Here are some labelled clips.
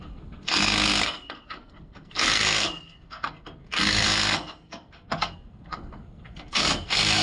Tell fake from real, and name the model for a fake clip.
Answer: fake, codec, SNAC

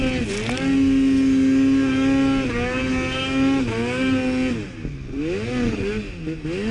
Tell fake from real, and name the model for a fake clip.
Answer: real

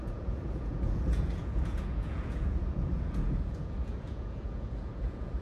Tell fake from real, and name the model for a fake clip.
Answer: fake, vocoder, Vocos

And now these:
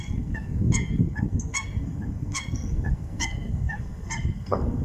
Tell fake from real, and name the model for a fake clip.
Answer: fake, codec, SNAC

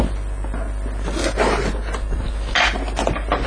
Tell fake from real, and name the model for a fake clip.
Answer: real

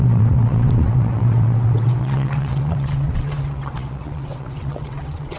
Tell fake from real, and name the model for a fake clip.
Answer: fake, vocoder, WaveNeXt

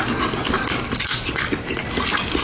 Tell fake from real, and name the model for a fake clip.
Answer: real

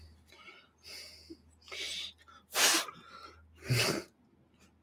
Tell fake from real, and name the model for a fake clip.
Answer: real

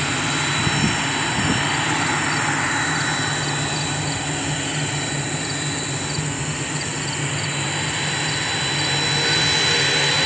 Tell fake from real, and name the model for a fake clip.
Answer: real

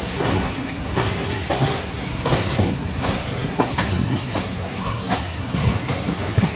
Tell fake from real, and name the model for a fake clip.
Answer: fake, codec, SNAC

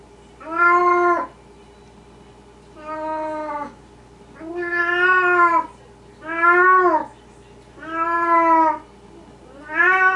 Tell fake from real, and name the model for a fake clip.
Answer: real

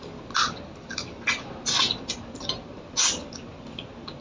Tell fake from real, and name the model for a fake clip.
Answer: real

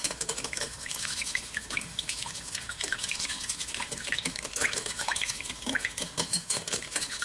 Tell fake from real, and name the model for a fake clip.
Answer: fake, autoencoder, DAC-VAE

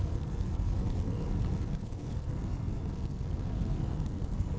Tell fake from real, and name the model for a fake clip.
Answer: fake, codec, SNAC